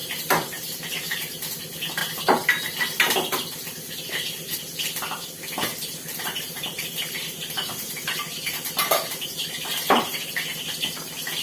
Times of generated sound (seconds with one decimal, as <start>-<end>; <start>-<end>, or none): 0.0-1.6; 6.1-10.3